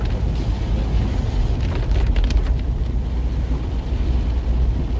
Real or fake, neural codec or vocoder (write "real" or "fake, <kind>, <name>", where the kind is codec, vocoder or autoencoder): real